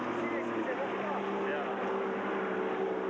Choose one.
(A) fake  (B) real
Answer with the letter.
B